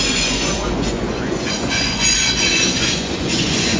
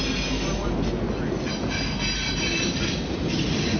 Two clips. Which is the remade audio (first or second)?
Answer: first